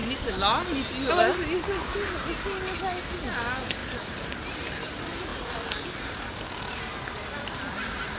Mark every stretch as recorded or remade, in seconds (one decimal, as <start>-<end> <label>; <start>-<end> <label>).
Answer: 0.0-3.8 recorded; 3.8-4.5 remade; 4.5-8.2 recorded